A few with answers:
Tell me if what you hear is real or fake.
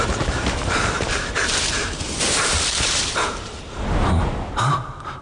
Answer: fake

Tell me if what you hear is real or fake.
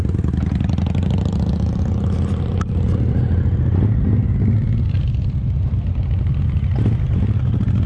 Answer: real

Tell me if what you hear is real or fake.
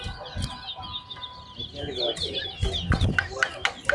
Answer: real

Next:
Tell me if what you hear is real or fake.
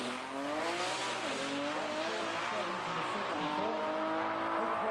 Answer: real